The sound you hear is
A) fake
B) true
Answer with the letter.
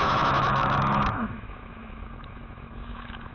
A